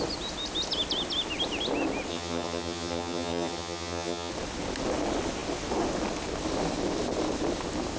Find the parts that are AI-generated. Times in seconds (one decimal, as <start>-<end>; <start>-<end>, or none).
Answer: 2.1-4.3